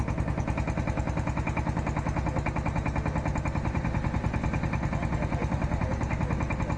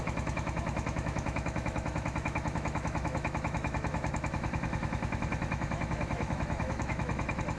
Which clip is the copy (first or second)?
second